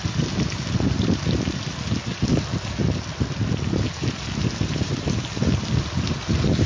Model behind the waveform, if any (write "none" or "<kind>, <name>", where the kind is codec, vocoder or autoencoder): none